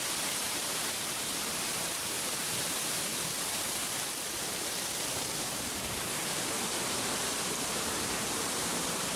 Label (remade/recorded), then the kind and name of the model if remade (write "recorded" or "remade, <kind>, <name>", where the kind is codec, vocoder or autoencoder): remade, vocoder, BigVGAN v2